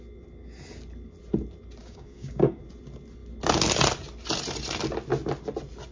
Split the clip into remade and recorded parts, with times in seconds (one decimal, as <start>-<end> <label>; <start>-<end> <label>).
0.0-1.8 recorded; 1.8-2.6 remade; 2.6-5.9 recorded